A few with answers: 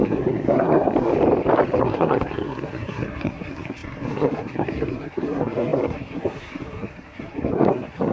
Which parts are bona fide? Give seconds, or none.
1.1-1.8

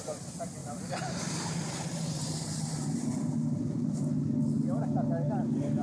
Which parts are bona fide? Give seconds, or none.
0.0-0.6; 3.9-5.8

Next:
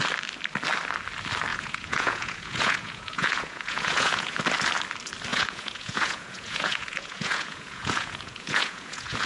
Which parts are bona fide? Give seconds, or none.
0.0-1.5; 4.4-5.3